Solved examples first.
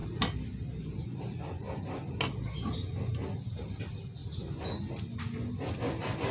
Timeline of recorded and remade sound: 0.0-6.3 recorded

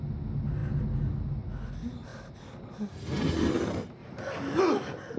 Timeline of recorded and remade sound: 0.0-4.0 recorded; 4.0-4.6 remade; 4.6-5.2 recorded

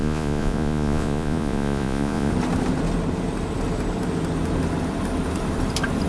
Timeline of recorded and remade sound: 0.0-2.3 remade; 2.3-6.1 recorded

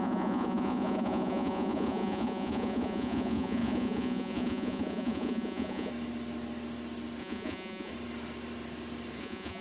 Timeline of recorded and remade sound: 0.0-5.9 remade; 5.9-7.2 recorded; 7.2-7.9 remade; 7.9-9.2 recorded; 9.2-9.6 remade

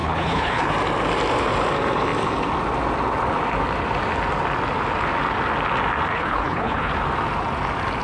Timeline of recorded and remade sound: 0.0-0.7 remade; 0.7-6.1 recorded; 6.1-6.9 remade; 6.9-8.0 recorded

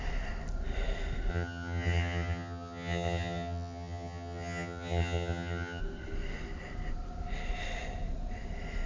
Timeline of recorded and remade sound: 0.0-1.3 recorded; 1.3-5.8 remade; 5.8-8.9 recorded

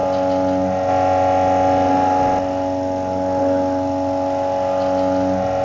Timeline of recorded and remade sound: 0.0-5.6 recorded

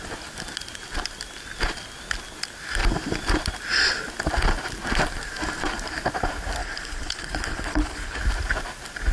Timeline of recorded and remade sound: 0.0-6.6 recorded; 6.6-8.2 remade; 8.2-9.1 recorded